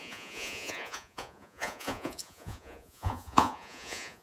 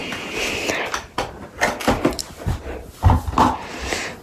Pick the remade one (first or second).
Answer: first